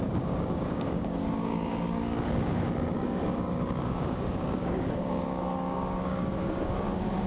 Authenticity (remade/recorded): remade